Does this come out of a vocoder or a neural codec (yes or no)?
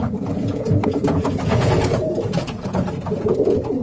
yes